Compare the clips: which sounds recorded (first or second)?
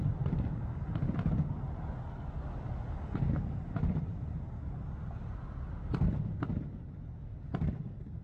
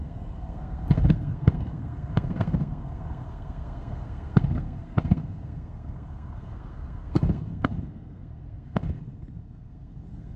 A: first